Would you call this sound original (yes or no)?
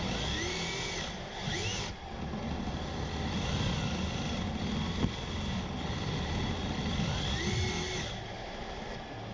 yes